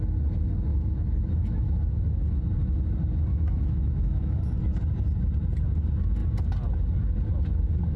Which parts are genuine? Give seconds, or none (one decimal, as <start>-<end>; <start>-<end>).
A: 0.0-0.7; 2.1-3.3; 4.6-8.0